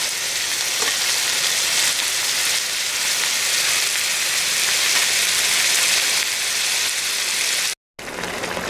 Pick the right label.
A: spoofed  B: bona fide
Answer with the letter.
B